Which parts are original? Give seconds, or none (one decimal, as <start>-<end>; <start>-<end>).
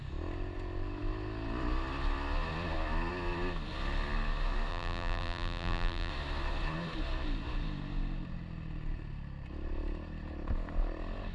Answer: 0.0-4.7; 6.1-11.3